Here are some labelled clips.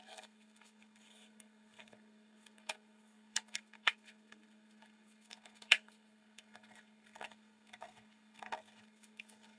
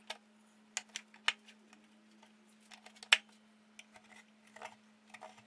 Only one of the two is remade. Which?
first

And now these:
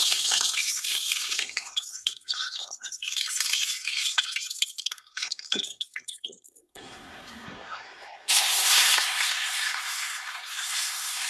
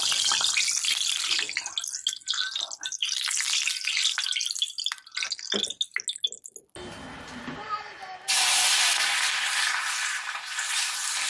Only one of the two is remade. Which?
first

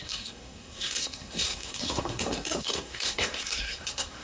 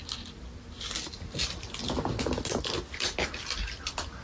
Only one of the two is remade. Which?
first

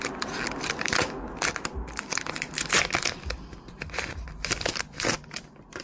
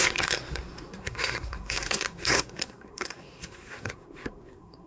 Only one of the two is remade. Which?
second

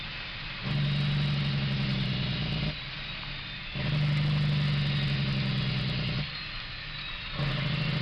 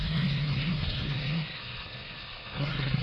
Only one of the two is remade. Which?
second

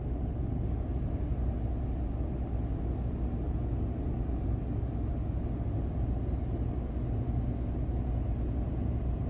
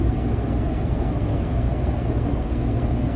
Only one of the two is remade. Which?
second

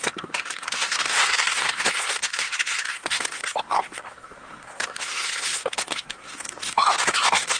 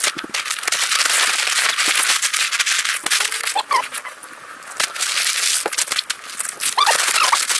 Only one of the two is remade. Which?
first